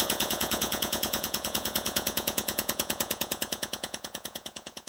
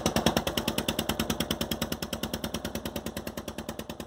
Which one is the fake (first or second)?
first